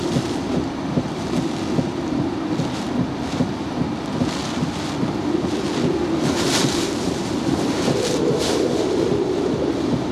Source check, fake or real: real